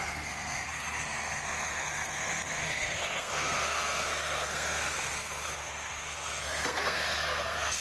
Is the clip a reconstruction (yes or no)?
yes